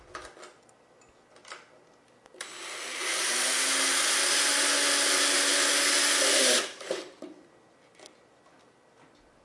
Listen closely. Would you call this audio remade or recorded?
recorded